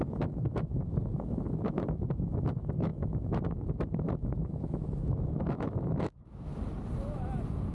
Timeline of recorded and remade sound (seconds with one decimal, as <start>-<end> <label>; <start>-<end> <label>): 0.0-6.5 remade; 6.5-7.7 recorded